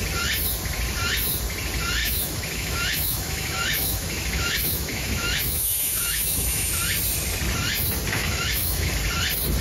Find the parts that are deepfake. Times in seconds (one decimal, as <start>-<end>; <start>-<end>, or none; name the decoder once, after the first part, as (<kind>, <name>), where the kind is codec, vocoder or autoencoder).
2.0-6.7 (autoencoder, DAC-VAE); 8.1-8.9